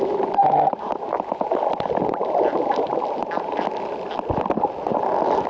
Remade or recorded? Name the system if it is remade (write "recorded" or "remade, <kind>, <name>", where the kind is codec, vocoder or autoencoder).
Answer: recorded